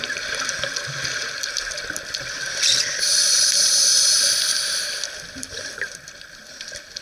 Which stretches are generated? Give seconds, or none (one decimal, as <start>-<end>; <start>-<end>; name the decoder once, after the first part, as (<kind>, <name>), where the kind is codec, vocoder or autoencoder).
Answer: 0.0-3.9 (vocoder, BigVGAN v2); 4.8-7.0